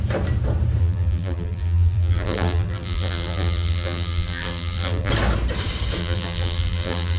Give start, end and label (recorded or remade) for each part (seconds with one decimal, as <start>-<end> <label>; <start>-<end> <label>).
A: 0.0-0.8 recorded; 0.8-5.1 remade; 5.1-6.0 recorded; 6.0-7.2 remade